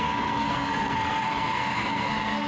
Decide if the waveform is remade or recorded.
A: remade